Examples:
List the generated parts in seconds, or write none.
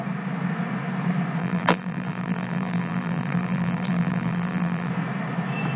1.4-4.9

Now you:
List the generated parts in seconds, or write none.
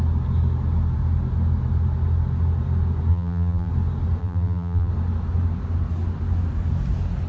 3.1-3.7; 4.2-4.9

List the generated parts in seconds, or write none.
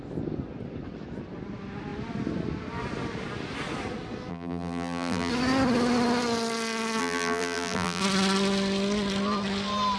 4.3-5.3; 7.0-8.0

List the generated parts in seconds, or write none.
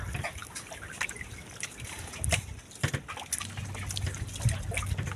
0.4-2.9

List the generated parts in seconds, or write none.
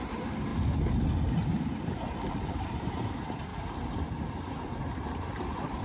0.0-0.5; 1.8-3.5; 4.3-5.8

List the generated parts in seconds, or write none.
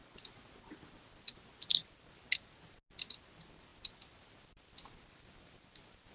none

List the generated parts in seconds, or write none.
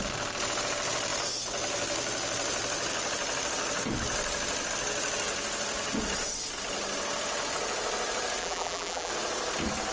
8.4-9.1